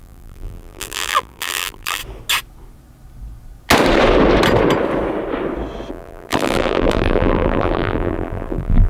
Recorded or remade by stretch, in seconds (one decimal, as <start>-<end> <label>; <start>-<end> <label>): 0.0-2.0 remade; 2.0-5.9 recorded; 5.9-8.9 remade